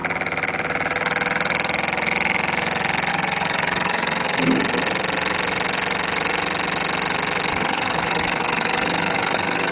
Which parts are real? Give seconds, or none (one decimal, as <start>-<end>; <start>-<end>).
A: 0.0-3.1; 4.6-7.5